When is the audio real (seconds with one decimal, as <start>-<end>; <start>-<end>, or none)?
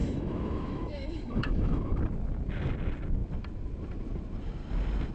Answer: 2.0-5.1